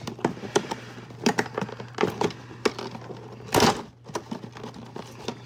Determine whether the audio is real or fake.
real